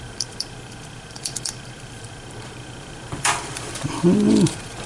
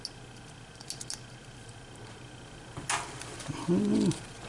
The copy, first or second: first